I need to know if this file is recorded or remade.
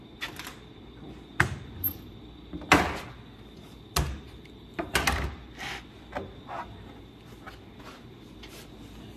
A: recorded